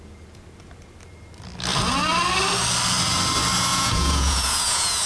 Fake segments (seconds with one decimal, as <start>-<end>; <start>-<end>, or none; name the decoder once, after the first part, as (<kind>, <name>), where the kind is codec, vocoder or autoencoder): 3.7-5.1 (vocoder, Vocos)